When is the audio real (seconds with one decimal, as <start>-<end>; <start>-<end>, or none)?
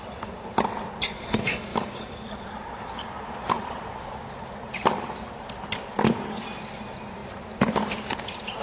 0.0-1.7; 4.0-8.6